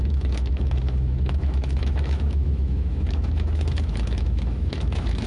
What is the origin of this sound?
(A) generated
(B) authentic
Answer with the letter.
A